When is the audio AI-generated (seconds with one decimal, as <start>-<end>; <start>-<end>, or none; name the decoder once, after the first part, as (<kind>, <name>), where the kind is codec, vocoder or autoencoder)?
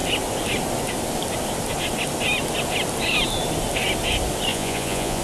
4.5-5.2 (vocoder, Vocos)